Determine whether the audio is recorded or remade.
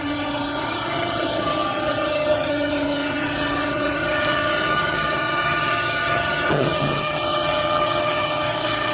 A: remade